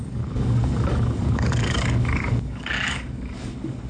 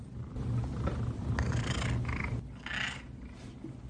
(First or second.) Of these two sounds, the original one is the second